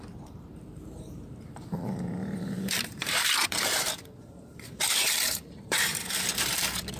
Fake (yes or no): yes